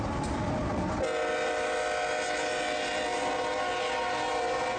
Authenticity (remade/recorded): recorded